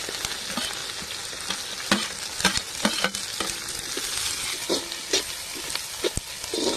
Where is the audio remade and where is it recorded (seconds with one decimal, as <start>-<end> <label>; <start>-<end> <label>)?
0.0-6.8 recorded